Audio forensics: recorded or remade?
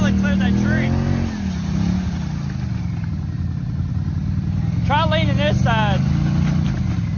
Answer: recorded